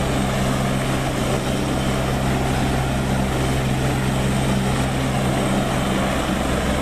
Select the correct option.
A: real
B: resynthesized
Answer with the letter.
A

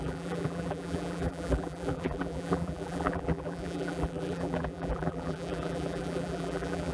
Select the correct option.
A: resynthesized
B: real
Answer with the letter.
A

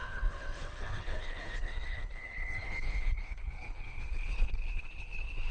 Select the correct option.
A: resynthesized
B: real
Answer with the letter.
A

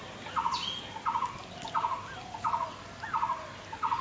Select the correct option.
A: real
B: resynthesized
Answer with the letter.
A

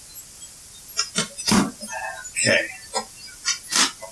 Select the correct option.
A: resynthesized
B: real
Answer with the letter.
B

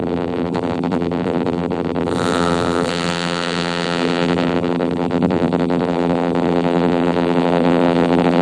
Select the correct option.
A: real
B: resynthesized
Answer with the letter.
B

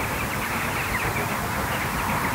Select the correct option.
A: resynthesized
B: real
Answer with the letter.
B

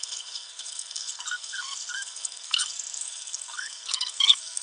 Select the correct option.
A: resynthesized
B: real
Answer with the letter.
A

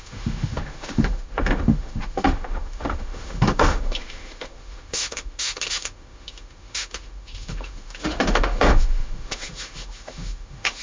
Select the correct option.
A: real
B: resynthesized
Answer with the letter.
B